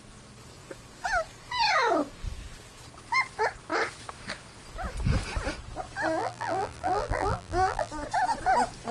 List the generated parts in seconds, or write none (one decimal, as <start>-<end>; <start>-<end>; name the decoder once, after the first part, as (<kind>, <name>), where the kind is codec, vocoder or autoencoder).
6.2-7.9 (vocoder, BigVGAN v2)

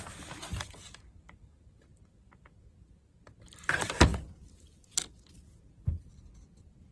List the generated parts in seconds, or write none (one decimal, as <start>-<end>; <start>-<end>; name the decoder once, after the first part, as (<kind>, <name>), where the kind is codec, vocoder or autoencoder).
0.5-3.2 (vocoder, BigVGAN v2)

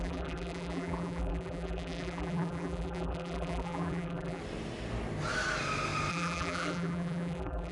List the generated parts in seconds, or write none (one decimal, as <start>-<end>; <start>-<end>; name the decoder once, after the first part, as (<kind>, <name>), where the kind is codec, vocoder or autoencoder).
0.0-4.4 (vocoder, BigVGAN v2); 6.1-7.7

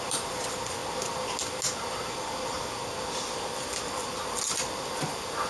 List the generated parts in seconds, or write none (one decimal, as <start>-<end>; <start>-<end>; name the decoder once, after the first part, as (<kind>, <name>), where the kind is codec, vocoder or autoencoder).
0.0-0.8 (vocoder, BigVGAN v2); 4.1-5.5